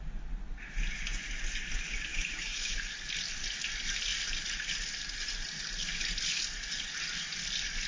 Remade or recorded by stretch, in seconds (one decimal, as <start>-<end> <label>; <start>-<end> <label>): 0.0-2.1 recorded; 2.1-2.8 remade; 2.8-7.9 recorded